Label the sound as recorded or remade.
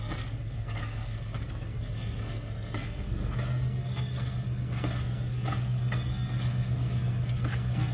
remade